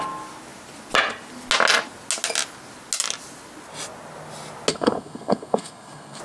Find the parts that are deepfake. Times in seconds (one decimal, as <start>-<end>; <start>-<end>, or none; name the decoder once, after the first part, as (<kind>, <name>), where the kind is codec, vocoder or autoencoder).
4.7-6.2 (codec, SNAC)